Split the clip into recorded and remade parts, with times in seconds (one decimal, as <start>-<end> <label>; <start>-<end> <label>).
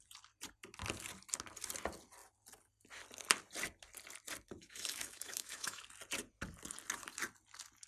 0.0-4.6 recorded; 4.6-5.8 remade; 5.8-7.9 recorded